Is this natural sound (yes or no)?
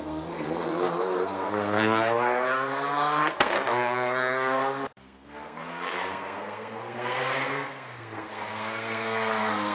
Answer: no